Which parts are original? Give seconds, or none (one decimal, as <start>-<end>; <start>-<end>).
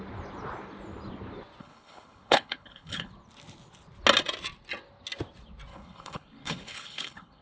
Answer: 0.0-1.6; 3.1-5.7